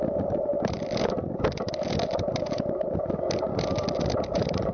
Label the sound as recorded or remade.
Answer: recorded